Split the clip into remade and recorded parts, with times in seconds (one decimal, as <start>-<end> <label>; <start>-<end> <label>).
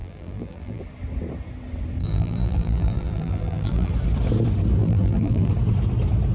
0.0-0.8 remade; 0.8-2.0 recorded; 2.0-3.9 remade; 3.9-4.8 recorded; 4.8-5.5 remade; 5.5-6.3 recorded